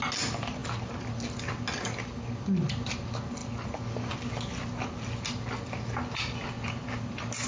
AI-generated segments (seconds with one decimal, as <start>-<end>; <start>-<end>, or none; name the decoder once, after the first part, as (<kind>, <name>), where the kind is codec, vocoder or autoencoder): none